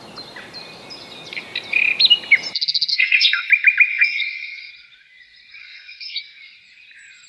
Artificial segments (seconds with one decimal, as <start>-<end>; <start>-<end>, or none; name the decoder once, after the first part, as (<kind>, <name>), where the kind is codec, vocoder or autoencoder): 2.9-3.5 (codec, SNAC); 3.9-4.7; 5.6-6.2